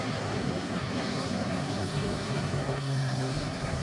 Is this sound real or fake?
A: fake